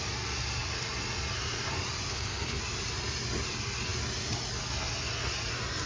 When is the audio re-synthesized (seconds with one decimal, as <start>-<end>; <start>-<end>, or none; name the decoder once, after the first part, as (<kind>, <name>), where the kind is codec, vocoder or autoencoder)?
2.1-2.6 (codec, HILCodec)